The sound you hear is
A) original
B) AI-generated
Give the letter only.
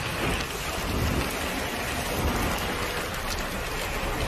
A